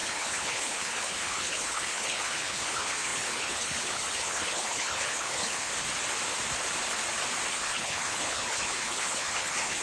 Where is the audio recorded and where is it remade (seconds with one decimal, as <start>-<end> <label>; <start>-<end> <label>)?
0.0-5.7 remade; 5.7-7.5 recorded; 7.5-9.8 remade